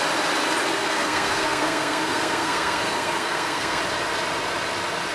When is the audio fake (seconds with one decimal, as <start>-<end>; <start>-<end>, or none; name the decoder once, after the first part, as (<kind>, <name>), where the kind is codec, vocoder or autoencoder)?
0.7-3.8 (codec, SNAC)